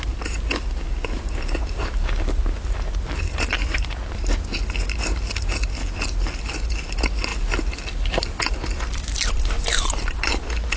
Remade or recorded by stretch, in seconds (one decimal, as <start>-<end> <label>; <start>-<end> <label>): 0.0-10.8 recorded